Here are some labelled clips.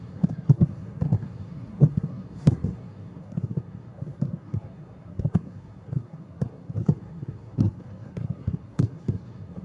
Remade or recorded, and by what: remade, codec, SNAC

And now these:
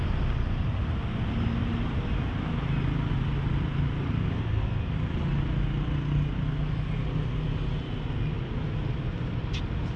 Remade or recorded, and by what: recorded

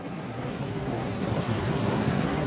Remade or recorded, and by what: remade, codec, SNAC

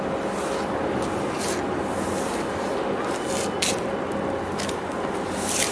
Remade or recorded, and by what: recorded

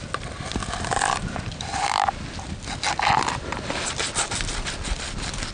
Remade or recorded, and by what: recorded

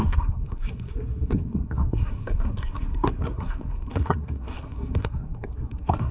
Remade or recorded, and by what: remade, codec, SNAC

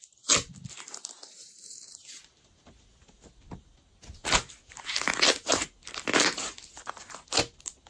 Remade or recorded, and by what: recorded